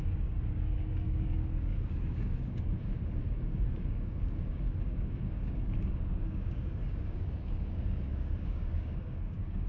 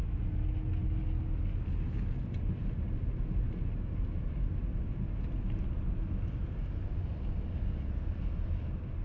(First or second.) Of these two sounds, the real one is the second